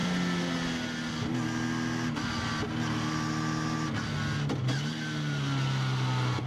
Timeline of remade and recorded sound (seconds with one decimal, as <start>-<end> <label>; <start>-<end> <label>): 0.0-6.5 recorded